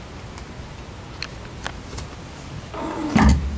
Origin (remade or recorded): recorded